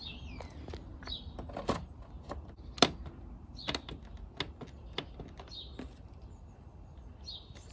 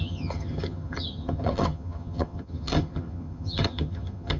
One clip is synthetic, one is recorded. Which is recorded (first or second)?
first